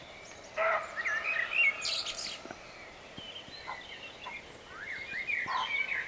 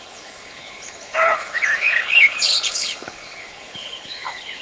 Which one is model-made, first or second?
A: second